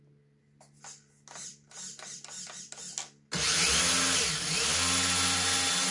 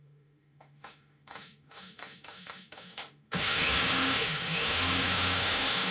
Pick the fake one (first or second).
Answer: second